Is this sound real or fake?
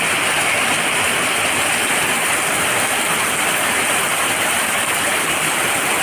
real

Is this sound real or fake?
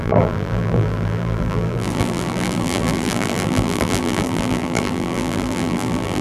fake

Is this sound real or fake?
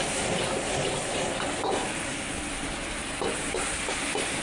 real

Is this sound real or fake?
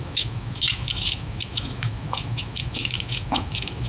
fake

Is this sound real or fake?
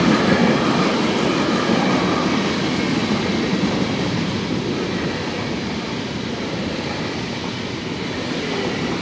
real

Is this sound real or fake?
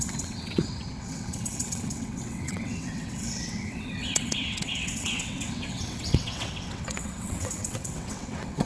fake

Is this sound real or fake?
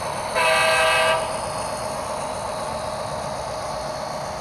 real